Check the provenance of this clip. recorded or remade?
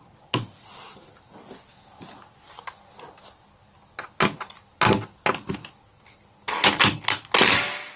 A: recorded